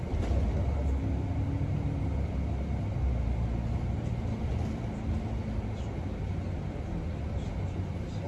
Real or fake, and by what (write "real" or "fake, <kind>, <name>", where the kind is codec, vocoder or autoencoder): real